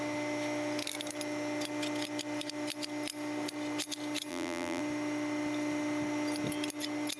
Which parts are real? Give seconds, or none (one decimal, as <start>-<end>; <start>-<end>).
0.0-4.3; 4.8-7.2